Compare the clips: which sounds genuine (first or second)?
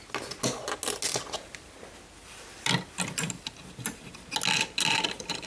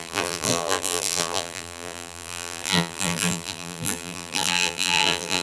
first